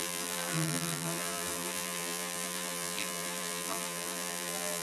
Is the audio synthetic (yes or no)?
yes